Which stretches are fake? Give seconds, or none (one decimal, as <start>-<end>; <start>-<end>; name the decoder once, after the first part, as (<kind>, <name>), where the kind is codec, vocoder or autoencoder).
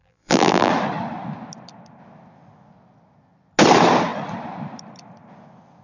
0.0-0.7 (vocoder, BigVGAN v2)